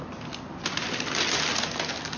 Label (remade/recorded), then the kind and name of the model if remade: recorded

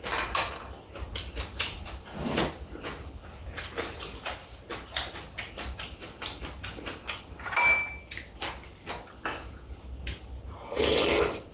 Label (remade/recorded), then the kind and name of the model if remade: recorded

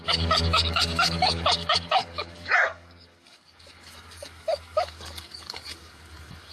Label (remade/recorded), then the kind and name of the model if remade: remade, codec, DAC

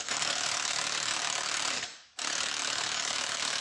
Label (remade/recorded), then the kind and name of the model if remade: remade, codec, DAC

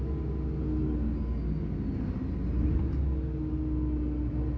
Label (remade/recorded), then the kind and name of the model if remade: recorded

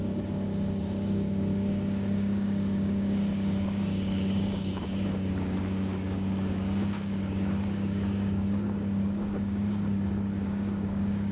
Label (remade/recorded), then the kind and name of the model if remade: remade, codec, DAC